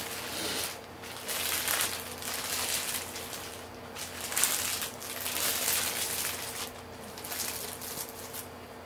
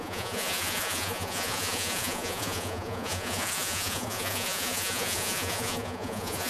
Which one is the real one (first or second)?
first